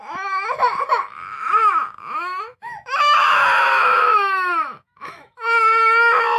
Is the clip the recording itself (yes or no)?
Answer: no